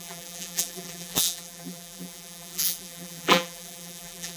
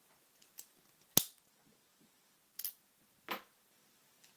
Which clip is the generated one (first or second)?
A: first